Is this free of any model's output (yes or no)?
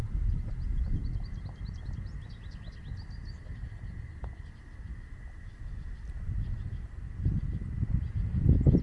yes